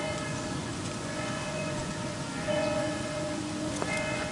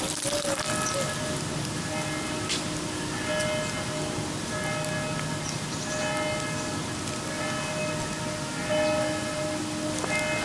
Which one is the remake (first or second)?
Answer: first